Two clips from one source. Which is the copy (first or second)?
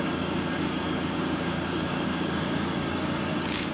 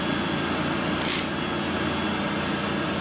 first